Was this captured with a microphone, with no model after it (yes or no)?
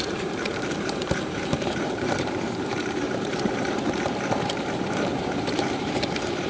no